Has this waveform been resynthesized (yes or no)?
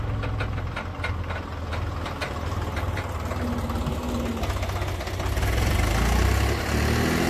no